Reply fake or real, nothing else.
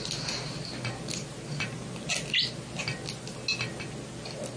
real